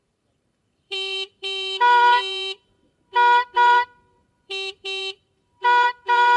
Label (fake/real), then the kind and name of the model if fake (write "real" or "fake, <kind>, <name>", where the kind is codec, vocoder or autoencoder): fake, vocoder, BigVGAN v2